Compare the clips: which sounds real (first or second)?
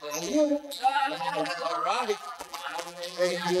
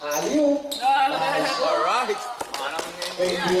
second